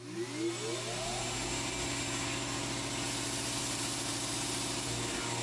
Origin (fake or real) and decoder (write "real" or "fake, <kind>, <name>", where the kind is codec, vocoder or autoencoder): real